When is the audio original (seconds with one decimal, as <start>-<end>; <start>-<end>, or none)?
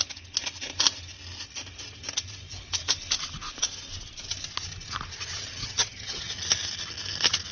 0.0-5.6; 6.4-7.5